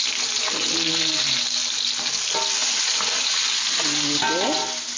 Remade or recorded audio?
recorded